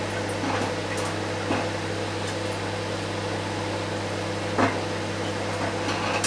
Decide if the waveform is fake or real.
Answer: real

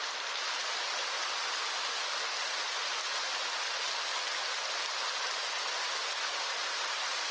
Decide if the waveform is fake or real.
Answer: real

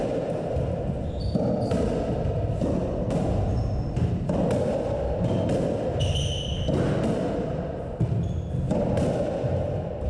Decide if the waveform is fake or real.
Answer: real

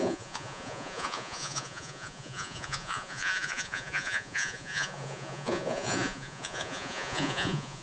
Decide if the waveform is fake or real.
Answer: fake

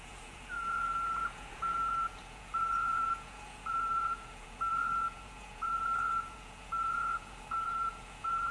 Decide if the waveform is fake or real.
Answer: fake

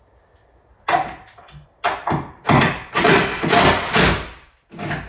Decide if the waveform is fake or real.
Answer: real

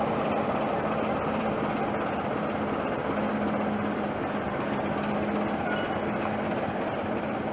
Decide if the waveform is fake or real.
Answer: real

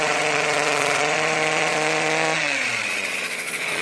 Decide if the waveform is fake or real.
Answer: fake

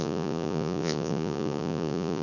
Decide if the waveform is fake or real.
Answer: fake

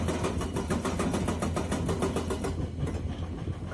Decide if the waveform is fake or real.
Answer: real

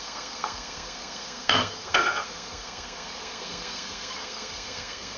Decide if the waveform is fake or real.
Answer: fake